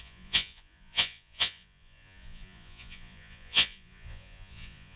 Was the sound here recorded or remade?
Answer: remade